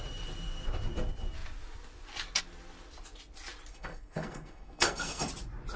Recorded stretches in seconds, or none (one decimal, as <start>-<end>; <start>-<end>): 0.0-3.7; 5.3-5.8